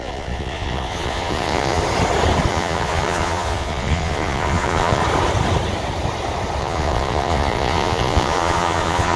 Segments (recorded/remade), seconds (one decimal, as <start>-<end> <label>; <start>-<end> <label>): 0.0-1.8 remade; 1.8-2.5 recorded; 2.5-5.0 remade; 5.0-6.6 recorded; 6.6-9.2 remade